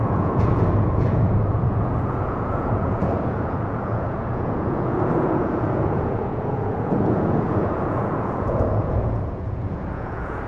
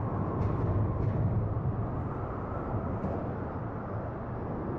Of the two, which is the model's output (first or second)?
first